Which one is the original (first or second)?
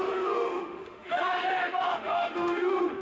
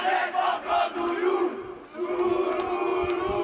second